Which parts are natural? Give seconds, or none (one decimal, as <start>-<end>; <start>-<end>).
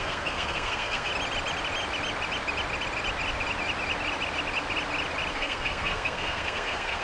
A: 1.1-5.3